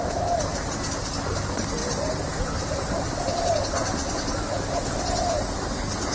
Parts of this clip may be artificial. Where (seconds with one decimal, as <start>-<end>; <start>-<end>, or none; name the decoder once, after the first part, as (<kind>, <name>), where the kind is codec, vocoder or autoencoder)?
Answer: 1.8-3.2 (vocoder, BigVGAN v2)